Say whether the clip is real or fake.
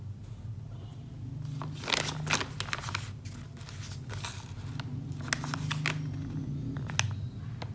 real